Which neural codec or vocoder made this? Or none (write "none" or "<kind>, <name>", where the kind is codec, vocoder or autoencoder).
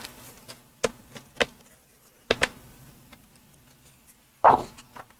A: none